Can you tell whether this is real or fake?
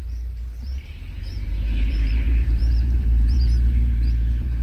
fake